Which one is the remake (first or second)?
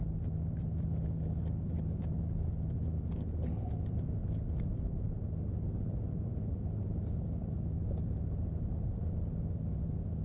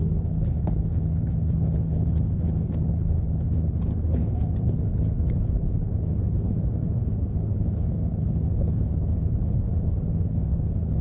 second